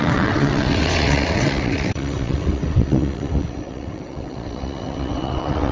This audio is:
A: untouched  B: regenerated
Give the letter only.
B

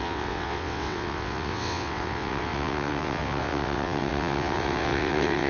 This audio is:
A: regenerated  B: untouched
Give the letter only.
A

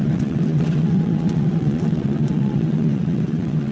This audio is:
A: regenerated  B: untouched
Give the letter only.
A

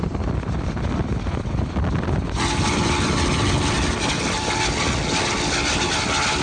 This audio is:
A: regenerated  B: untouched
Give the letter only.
B